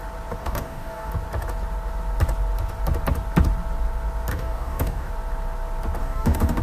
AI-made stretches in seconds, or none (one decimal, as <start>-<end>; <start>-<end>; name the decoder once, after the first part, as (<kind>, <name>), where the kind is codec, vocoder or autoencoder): 0.4-1.1 (codec, DAC); 4.3-5.1; 6.0-6.6